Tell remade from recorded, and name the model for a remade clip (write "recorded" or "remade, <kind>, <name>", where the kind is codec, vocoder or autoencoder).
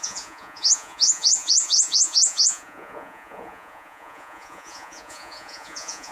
remade, vocoder, Vocos